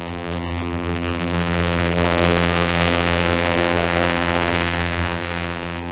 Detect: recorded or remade remade